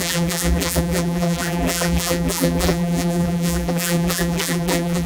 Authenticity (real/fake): fake